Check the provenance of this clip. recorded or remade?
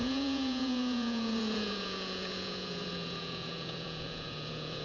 remade